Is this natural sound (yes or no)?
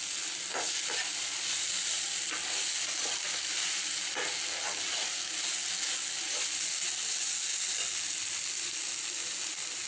yes